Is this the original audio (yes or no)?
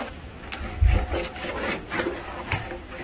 yes